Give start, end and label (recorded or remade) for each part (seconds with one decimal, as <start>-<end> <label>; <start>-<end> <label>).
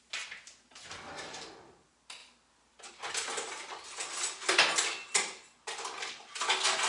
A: 0.0-6.9 recorded